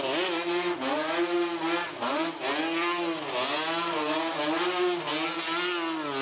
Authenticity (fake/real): real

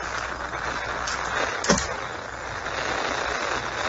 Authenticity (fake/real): real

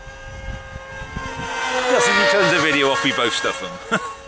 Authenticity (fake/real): real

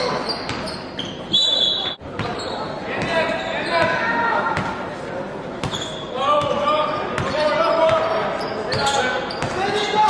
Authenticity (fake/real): real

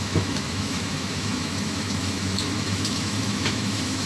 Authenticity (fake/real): fake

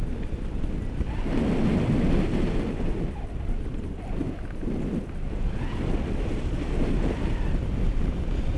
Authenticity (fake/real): real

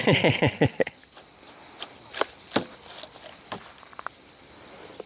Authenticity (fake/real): real